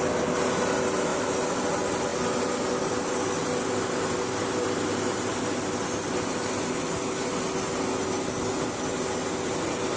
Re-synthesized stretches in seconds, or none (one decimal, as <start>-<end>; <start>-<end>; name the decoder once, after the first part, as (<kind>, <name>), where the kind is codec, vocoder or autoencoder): none